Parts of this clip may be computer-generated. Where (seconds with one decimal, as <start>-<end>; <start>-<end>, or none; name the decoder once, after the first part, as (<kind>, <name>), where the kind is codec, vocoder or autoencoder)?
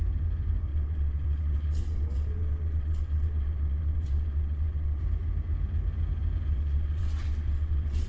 0.7-5.0 (vocoder, WaveNeXt); 6.5-8.1